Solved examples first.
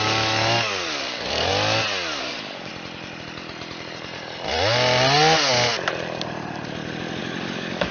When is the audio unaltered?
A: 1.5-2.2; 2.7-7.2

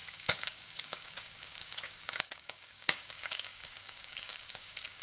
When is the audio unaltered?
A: none

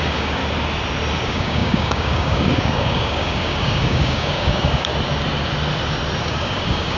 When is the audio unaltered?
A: 0.4-1.2; 4.9-6.2

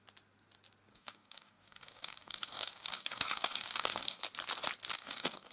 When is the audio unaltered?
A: 0.0-0.9; 4.2-4.9

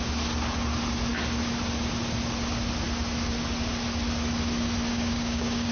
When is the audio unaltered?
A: 0.0-4.9

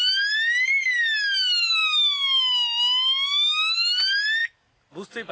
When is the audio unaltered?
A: 0.0-5.3

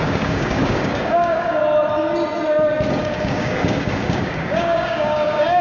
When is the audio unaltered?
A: 1.6-2.9

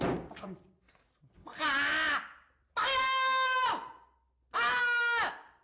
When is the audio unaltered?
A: 0.0-5.6